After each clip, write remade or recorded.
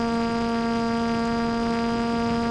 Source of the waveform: recorded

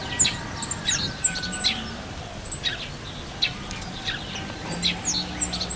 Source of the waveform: recorded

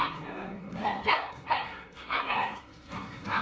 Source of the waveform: remade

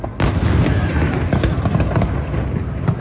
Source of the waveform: recorded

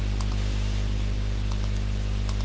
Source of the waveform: recorded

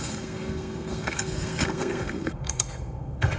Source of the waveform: remade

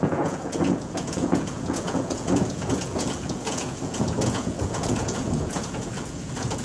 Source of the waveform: remade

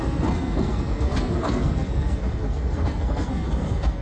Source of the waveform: remade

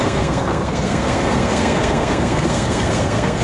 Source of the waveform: remade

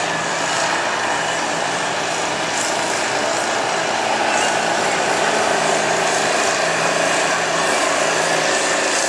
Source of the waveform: recorded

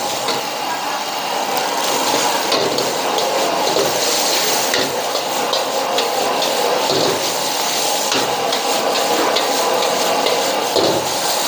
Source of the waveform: recorded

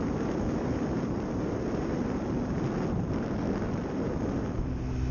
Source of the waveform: recorded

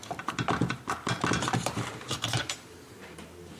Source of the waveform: recorded